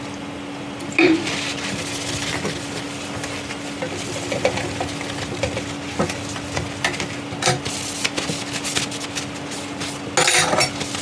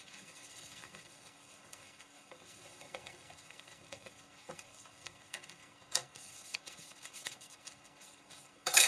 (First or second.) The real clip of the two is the first